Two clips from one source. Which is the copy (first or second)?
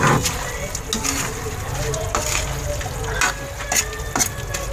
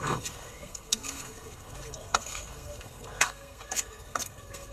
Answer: second